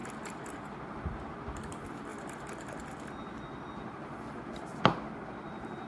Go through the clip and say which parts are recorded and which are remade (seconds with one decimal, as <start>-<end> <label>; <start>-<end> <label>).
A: 0.0-5.9 recorded